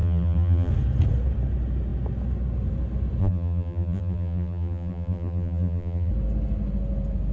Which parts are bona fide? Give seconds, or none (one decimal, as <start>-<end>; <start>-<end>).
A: 0.7-3.2; 6.1-7.3